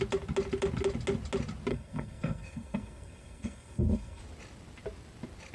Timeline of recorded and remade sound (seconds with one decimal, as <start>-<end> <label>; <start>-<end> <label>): 0.0-1.7 recorded; 1.7-4.2 remade; 4.2-5.5 recorded